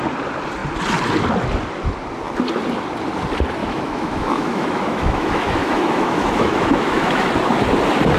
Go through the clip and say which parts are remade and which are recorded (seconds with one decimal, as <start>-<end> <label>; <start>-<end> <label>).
0.0-3.6 recorded; 3.6-7.3 remade; 7.3-8.2 recorded